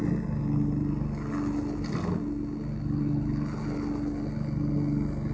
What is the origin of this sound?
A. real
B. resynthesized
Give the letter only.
A